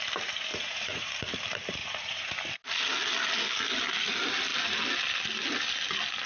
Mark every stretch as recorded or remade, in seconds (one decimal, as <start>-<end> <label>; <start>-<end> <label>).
0.0-0.5 recorded; 0.5-1.1 remade; 1.1-1.8 recorded; 1.8-2.4 remade; 2.4-6.3 recorded

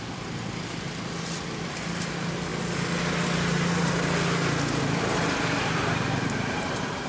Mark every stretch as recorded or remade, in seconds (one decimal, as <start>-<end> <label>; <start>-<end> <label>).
0.0-7.1 recorded